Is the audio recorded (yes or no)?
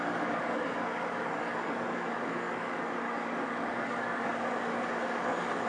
no